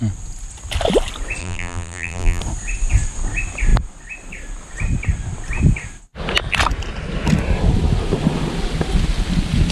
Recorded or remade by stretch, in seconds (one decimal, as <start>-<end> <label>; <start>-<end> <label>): 0.0-1.4 recorded; 1.4-2.4 remade; 2.4-9.7 recorded